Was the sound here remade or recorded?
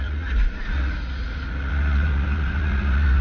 remade